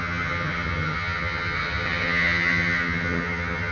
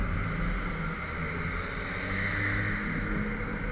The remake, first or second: first